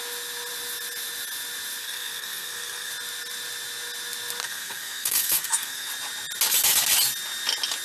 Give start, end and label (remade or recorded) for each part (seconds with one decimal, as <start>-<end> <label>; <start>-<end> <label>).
0.0-1.8 recorded; 1.8-2.9 remade; 2.9-4.4 recorded; 4.4-5.9 remade; 5.9-7.8 recorded